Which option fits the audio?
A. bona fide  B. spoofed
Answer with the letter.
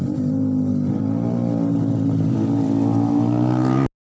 A